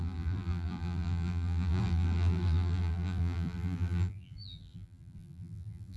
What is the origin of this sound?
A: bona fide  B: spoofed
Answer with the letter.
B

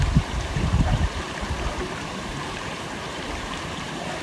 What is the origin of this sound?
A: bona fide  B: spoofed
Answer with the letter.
B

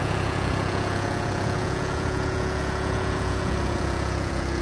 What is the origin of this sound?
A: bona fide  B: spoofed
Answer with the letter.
B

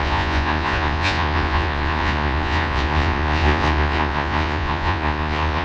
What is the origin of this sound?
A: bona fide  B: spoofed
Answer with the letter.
B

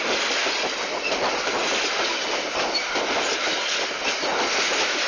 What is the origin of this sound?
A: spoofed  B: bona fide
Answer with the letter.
B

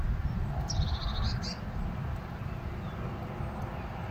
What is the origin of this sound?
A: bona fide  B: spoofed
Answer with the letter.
A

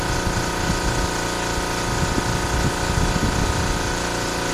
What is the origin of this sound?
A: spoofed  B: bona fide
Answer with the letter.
B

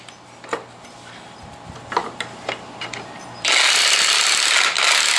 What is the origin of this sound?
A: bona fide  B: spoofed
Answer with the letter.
A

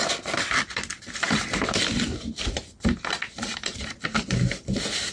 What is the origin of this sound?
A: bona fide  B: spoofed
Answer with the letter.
B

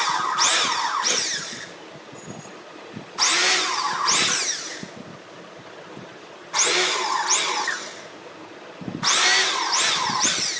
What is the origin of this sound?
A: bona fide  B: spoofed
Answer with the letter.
A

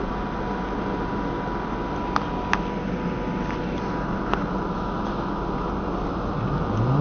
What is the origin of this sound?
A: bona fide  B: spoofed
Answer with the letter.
A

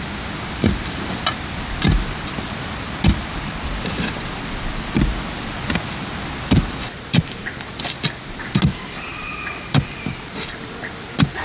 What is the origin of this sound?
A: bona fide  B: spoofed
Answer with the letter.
A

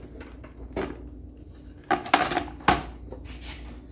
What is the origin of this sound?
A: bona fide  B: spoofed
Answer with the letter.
A